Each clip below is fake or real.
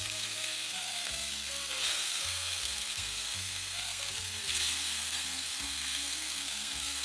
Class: fake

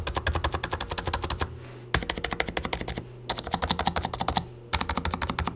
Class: real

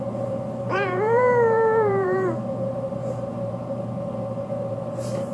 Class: fake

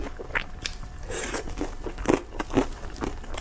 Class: real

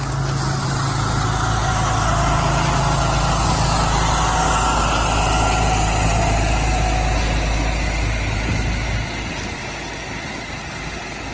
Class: real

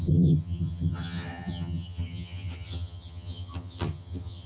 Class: fake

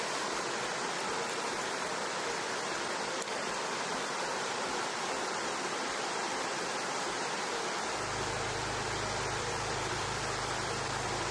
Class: fake